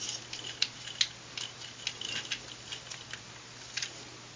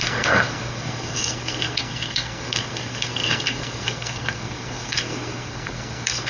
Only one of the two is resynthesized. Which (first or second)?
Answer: second